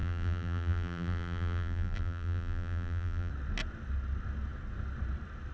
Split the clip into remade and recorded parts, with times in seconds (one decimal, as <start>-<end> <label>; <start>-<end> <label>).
0.0-3.3 remade; 3.3-5.5 recorded